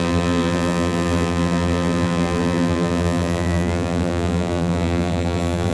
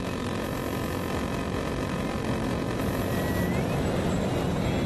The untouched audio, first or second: second